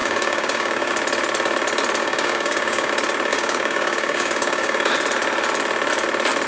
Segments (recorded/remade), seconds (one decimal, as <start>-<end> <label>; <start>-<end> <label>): 0.0-0.9 remade; 0.9-2.0 recorded; 2.0-2.9 remade; 2.9-3.3 recorded; 3.3-4.9 remade; 4.9-6.5 recorded